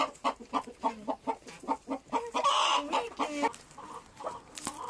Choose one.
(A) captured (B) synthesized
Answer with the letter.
A